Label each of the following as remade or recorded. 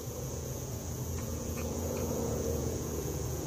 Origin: remade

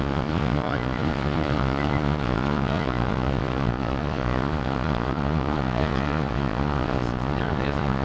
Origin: remade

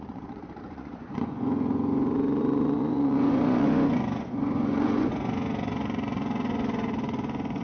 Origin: remade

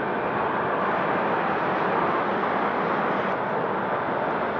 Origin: recorded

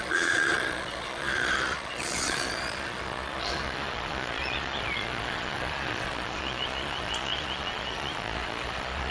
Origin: remade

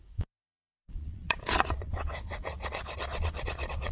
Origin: remade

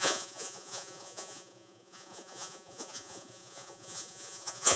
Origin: remade